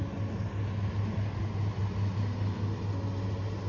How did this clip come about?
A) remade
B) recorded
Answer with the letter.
B